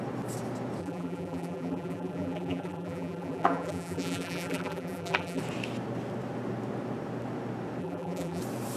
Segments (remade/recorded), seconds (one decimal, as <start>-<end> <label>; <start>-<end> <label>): 0.0-0.8 recorded; 0.8-5.4 remade; 5.4-7.8 recorded; 7.8-8.4 remade; 8.4-8.8 recorded